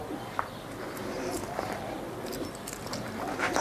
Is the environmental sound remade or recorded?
recorded